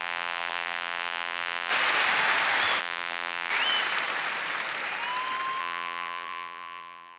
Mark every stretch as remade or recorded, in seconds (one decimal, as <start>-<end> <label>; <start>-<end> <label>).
0.0-1.7 remade; 1.7-2.8 recorded; 2.8-3.5 remade; 3.5-5.6 recorded; 5.6-7.2 remade